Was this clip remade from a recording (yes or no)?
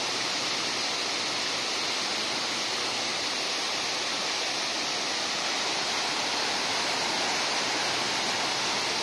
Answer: no